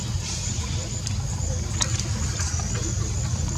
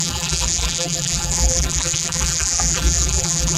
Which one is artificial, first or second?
second